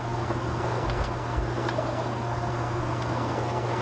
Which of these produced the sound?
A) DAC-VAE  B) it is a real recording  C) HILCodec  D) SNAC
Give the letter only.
D